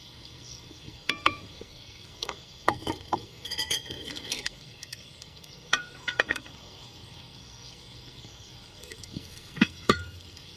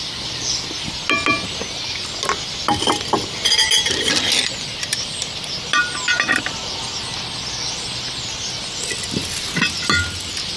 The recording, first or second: second